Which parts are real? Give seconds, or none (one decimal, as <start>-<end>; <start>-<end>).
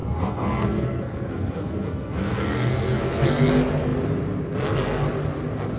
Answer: 3.5-5.8